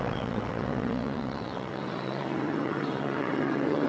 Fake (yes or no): yes